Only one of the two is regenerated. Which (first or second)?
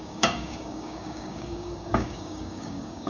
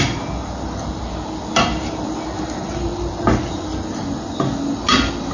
first